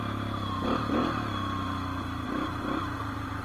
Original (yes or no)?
yes